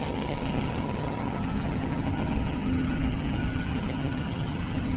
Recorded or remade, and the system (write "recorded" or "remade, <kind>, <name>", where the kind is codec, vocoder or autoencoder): remade, vocoder, HiFi-GAN